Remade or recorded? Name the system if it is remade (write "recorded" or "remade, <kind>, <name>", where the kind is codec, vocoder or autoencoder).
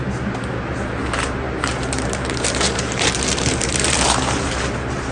remade, vocoder, BigVGAN v2